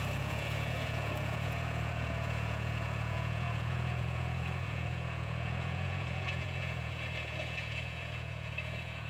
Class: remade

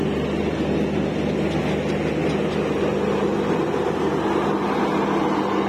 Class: recorded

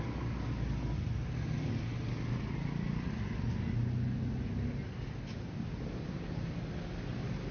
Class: recorded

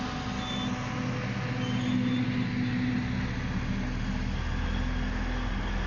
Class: recorded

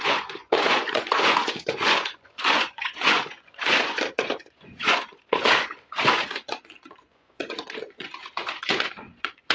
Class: remade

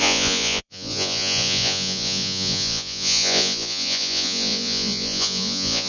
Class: remade